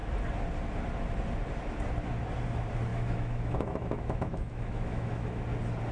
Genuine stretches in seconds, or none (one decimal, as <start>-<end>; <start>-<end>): 0.0-2.9; 5.4-5.9